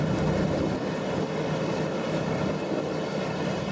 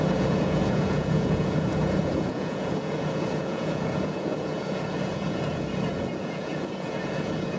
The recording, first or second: first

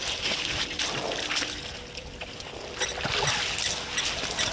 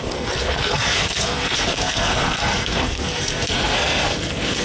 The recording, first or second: first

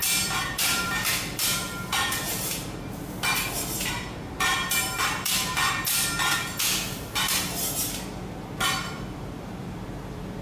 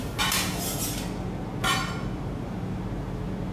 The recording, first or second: second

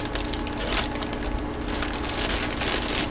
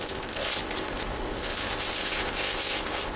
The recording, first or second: first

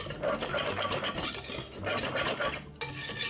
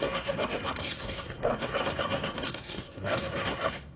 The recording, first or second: first